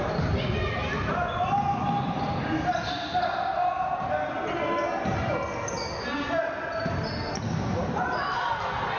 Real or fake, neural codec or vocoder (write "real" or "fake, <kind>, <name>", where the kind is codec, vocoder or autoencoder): real